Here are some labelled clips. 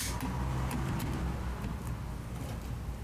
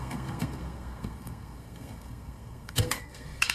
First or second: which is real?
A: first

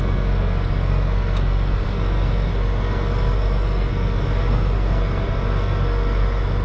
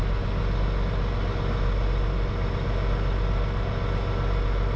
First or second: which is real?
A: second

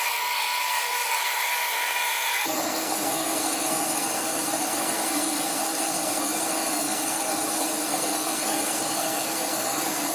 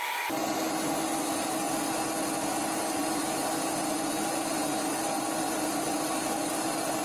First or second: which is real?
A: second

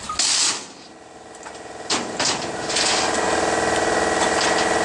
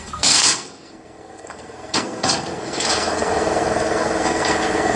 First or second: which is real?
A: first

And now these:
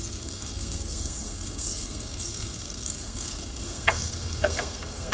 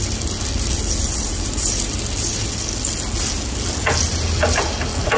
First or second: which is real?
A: second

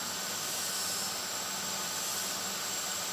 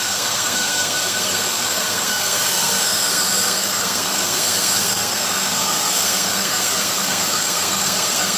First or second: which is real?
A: first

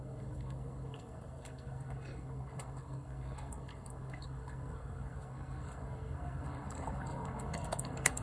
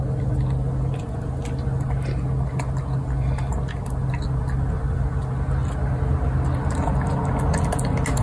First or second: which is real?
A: second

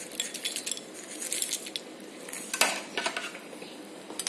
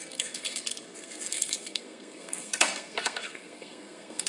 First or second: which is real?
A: first